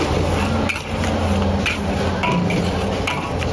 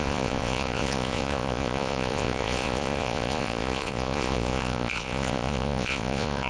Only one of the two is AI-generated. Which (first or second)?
second